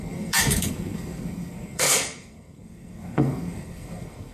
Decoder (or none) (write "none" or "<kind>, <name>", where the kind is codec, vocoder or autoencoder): codec, SNAC